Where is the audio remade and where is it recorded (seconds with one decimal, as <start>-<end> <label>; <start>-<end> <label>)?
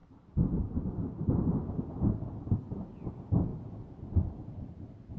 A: 0.0-5.2 recorded